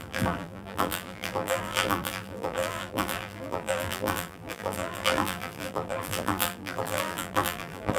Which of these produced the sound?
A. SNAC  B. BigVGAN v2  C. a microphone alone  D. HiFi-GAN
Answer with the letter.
B